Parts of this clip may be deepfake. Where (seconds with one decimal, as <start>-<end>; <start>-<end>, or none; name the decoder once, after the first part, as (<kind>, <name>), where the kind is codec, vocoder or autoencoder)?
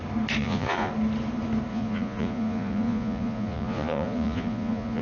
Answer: 0.4-0.9 (vocoder, Vocos); 1.7-5.0